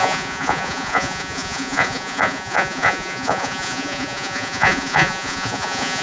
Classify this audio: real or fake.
fake